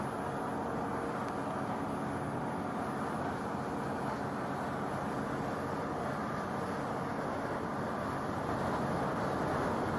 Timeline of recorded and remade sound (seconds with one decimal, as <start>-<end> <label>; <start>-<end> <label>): 0.0-7.7 recorded; 7.7-8.2 remade; 8.2-10.0 recorded